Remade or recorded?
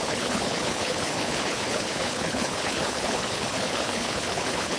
remade